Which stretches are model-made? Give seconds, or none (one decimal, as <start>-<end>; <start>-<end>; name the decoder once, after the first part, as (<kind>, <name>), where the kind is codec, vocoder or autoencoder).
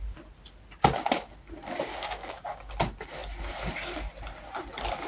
1.9-2.7 (codec, DAC)